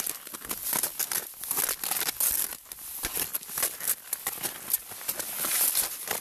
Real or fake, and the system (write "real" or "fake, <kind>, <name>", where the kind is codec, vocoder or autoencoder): real